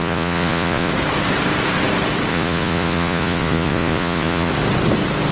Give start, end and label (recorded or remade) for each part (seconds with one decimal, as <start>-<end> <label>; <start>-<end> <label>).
0.0-0.9 remade; 0.9-2.3 recorded; 2.3-4.5 remade; 4.5-5.3 recorded

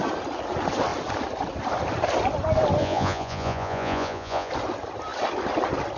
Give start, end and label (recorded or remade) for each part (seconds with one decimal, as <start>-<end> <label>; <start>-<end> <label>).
0.0-2.8 recorded; 2.8-4.5 remade; 4.5-6.0 recorded

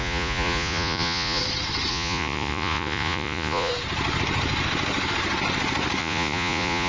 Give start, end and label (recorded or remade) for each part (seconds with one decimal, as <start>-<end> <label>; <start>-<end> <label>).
0.0-1.4 remade; 1.4-1.9 recorded; 1.9-3.7 remade; 3.7-6.0 recorded; 6.0-6.9 remade